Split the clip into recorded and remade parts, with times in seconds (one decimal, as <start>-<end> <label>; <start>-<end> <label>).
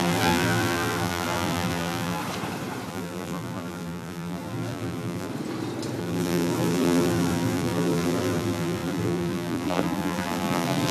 0.0-2.2 remade; 2.2-2.9 recorded; 2.9-5.3 remade; 5.3-6.0 recorded; 6.0-10.9 remade